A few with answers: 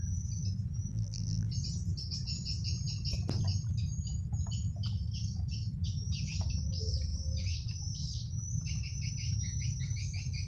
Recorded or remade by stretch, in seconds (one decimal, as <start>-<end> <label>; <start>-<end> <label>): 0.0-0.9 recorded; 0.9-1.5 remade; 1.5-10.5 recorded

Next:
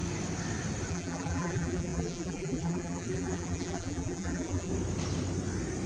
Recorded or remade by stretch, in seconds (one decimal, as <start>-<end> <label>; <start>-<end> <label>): 0.0-0.9 recorded; 0.9-4.7 remade; 4.7-5.9 recorded

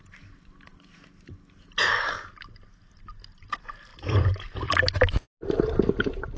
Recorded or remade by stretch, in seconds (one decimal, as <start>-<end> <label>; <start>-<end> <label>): 0.0-3.9 recorded; 3.9-4.7 remade; 4.7-6.4 recorded

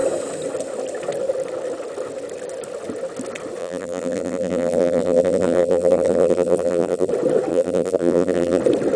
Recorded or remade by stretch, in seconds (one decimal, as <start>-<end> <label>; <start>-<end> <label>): 0.0-3.6 recorded; 3.6-7.1 remade; 7.1-7.5 recorded; 7.5-8.6 remade; 8.6-9.0 recorded

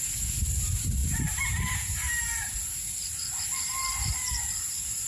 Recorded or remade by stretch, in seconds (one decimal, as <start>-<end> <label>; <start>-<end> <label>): 0.0-5.1 remade